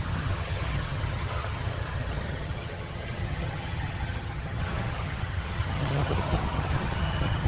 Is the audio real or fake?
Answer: fake